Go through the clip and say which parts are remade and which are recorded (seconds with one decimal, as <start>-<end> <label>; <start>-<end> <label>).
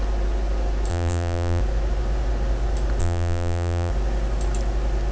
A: 0.0-0.9 recorded; 0.9-1.6 remade; 1.6-3.0 recorded; 3.0-3.9 remade; 3.9-5.1 recorded